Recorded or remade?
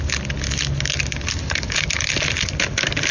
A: recorded